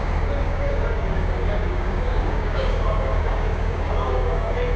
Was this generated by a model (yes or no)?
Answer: yes